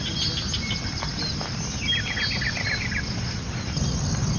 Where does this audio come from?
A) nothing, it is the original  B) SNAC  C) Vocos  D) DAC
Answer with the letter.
A